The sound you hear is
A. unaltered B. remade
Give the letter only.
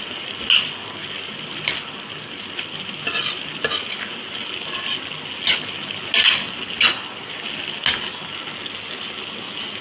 A